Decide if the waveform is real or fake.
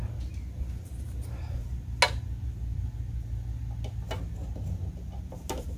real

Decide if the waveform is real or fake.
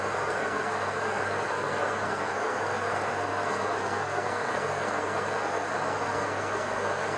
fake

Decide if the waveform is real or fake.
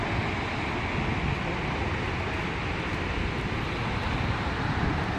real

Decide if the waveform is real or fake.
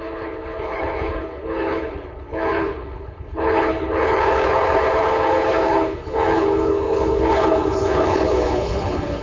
fake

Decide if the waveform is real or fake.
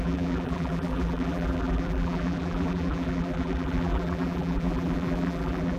fake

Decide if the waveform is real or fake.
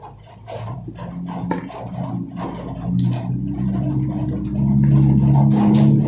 real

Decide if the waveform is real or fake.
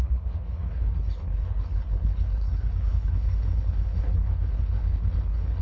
fake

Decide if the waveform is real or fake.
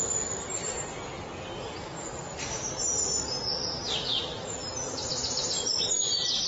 real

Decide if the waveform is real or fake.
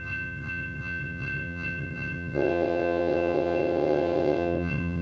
fake